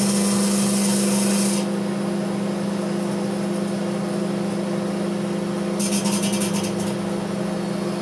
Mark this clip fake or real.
real